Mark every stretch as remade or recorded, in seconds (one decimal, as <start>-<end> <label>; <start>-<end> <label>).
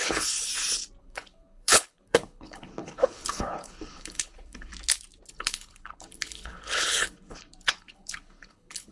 0.0-0.5 remade; 0.5-1.0 recorded; 1.0-4.7 remade; 4.7-5.3 recorded; 5.3-8.9 remade